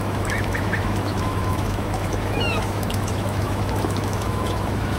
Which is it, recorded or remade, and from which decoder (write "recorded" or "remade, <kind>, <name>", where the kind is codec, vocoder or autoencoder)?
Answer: remade, autoencoder, DAC-VAE